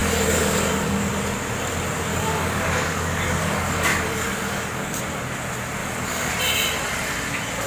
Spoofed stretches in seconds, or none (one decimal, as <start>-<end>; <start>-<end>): 0.0-1.1; 2.1-5.0; 5.8-6.3